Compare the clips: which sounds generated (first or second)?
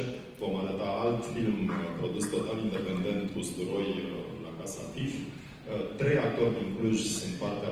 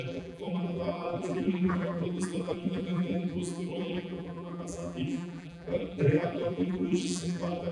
second